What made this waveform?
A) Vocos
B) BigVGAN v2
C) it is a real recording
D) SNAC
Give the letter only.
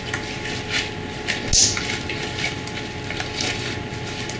C